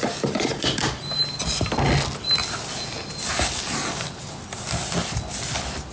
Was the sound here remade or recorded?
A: recorded